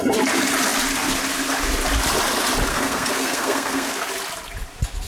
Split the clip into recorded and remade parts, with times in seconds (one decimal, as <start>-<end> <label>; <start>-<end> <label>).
0.0-2.7 recorded; 2.7-4.1 remade; 4.1-5.1 recorded